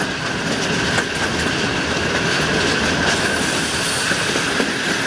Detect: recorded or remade recorded